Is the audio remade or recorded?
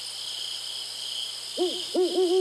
recorded